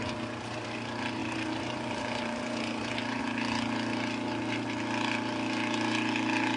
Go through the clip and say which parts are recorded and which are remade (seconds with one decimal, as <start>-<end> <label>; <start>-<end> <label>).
0.0-1.2 recorded; 1.2-3.2 remade; 3.2-6.6 recorded